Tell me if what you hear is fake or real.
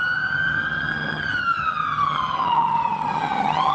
fake